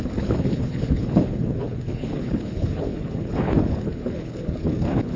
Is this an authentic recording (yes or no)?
no